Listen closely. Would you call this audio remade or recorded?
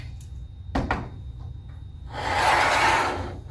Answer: recorded